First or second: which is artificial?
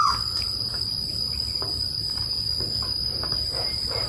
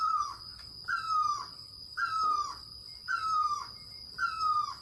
first